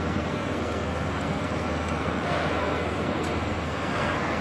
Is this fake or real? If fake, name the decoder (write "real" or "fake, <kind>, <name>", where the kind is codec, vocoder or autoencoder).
fake, codec, SNAC